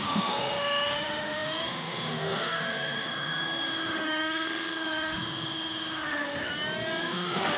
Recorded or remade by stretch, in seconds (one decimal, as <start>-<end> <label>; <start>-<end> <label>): 0.0-6.5 remade; 6.5-7.0 recorded; 7.0-7.6 remade